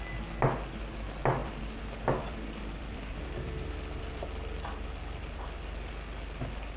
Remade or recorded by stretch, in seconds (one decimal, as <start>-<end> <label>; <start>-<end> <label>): 0.0-1.4 recorded; 1.4-5.4 remade; 5.4-6.8 recorded